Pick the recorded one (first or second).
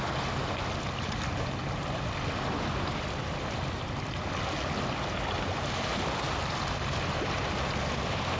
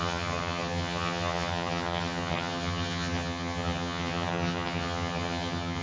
first